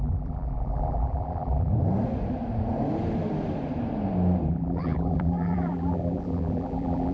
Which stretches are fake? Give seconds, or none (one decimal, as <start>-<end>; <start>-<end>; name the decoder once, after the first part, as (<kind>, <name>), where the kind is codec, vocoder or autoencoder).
0.0-1.7 (vocoder, BigVGAN v2); 4.5-7.1